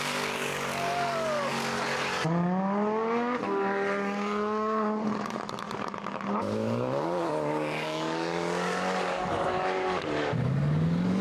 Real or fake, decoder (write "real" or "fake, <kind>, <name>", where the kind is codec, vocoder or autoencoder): fake, codec, DAC